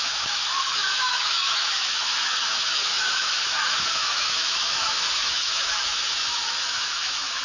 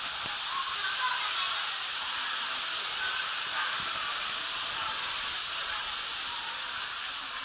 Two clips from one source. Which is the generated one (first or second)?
first